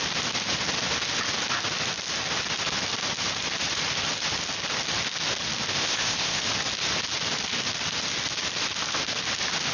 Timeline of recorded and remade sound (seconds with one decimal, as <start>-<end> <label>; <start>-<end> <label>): 0.0-5.7 recorded; 5.7-6.4 remade; 6.4-9.7 recorded